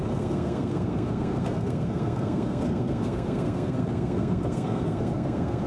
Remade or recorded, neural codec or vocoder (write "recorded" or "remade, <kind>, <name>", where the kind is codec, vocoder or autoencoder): remade, codec, SNAC